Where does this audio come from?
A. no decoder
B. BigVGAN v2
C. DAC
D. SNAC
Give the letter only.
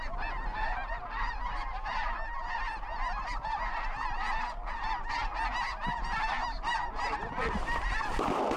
A